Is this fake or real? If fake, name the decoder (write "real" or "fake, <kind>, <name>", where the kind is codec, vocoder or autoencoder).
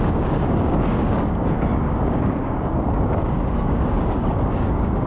fake, codec, DAC